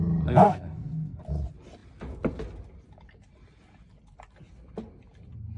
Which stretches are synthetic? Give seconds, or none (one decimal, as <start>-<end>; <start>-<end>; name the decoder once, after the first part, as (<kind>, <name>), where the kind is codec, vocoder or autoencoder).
0.4-1.2 (codec, SNAC)